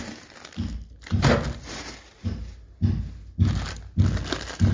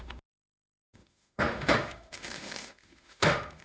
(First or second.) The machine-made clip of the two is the second